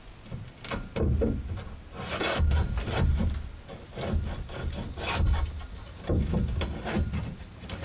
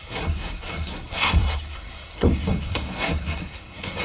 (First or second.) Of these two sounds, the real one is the first